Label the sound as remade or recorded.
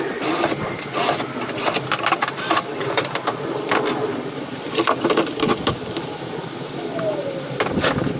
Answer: recorded